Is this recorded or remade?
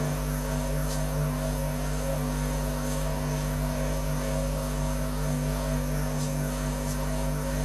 remade